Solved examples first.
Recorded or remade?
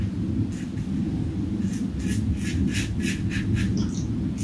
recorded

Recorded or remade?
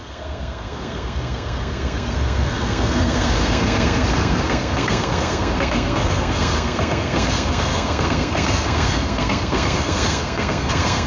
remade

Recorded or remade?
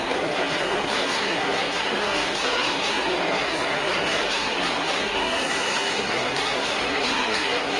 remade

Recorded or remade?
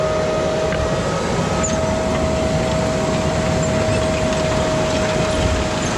recorded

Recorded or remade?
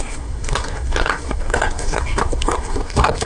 remade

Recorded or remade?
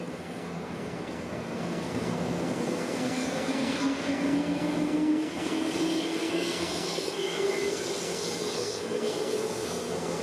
remade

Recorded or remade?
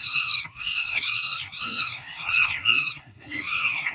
remade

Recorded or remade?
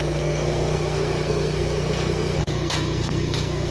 remade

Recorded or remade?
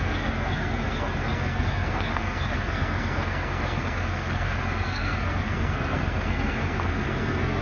remade